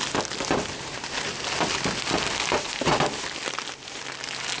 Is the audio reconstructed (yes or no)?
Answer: no